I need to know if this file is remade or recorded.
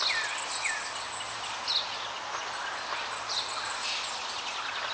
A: recorded